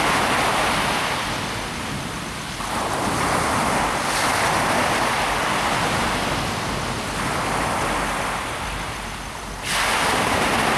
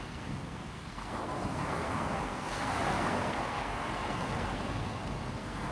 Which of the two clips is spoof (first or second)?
second